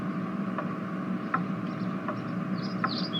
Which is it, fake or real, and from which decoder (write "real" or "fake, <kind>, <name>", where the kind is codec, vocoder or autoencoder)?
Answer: fake, vocoder, BigVGAN v2